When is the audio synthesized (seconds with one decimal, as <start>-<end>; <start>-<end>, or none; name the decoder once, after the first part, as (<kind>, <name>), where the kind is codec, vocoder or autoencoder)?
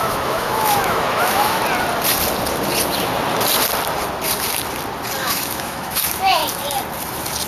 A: 0.0-1.6 (autoencoder, DAC-VAE); 5.2-6.4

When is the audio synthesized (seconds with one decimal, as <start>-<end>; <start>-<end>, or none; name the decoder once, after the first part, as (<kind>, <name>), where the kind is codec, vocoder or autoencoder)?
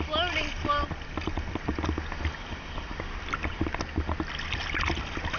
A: none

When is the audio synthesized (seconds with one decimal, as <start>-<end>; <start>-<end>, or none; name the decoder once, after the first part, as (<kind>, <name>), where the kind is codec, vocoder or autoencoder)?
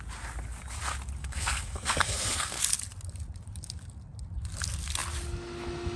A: 1.2-2.6 (codec, SNAC)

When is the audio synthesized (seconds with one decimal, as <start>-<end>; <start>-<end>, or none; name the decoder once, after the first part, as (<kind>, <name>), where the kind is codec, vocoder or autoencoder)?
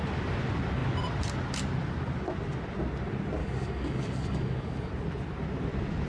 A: 3.4-4.9 (codec, DAC)